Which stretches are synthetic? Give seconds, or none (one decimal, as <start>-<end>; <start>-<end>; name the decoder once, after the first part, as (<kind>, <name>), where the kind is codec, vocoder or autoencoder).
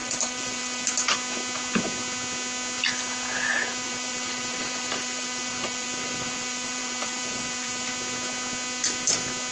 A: 0.0-0.9 (vocoder, BigVGAN v2); 3.5-7.9